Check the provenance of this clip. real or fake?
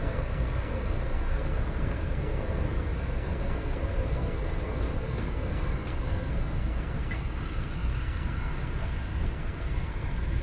fake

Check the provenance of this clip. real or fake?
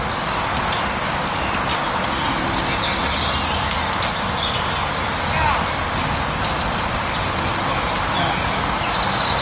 real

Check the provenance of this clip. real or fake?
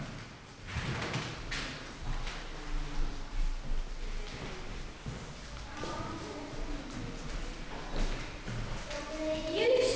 real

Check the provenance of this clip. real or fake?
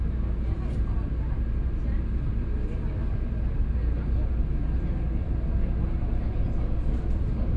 real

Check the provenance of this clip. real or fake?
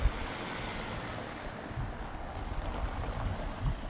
real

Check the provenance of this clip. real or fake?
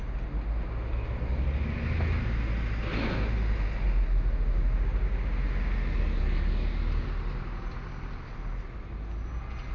real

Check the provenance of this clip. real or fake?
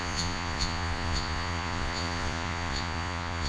fake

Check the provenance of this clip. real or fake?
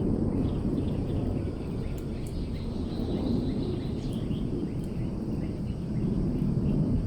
fake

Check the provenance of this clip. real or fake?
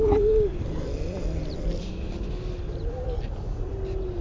real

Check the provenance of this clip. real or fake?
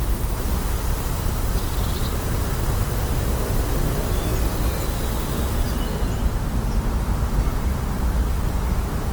real